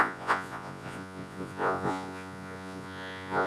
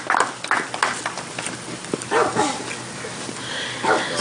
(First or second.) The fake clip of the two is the first